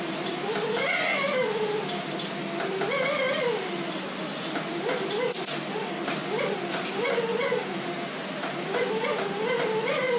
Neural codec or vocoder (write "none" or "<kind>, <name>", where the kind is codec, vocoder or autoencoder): none